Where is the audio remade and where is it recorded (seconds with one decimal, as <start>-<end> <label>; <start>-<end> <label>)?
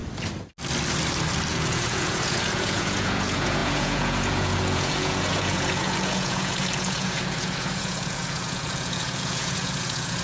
0.0-1.5 recorded; 1.5-10.2 remade